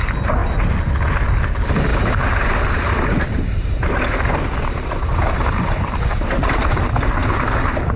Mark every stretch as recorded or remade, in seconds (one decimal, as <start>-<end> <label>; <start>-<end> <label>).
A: 0.0-8.0 recorded